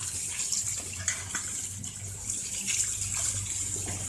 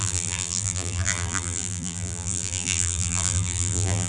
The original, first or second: first